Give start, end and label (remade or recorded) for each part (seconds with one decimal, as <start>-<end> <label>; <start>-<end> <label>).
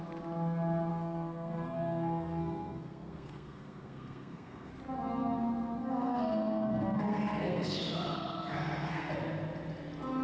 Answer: 0.0-0.9 recorded; 0.9-4.7 remade; 4.7-5.8 recorded; 5.8-9.1 remade; 9.1-10.2 recorded